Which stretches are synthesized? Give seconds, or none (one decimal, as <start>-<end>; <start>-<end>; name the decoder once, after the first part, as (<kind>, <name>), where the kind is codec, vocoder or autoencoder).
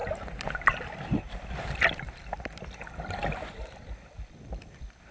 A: none